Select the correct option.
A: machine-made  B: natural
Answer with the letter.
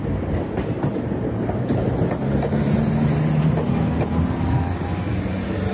B